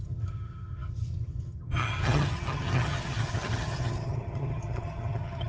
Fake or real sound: fake